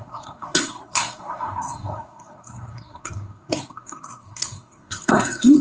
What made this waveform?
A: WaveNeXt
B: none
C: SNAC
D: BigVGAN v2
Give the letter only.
C